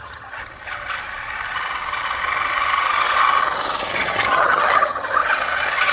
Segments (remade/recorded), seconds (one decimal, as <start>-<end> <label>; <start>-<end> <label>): 0.0-0.4 remade; 0.4-3.9 recorded; 3.9-5.2 remade; 5.2-5.9 recorded